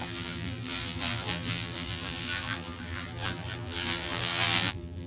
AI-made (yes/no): yes